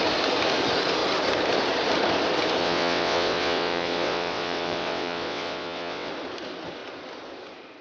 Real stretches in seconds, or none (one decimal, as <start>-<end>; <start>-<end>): 0.0-2.6; 6.1-7.8